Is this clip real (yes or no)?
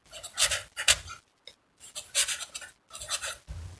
yes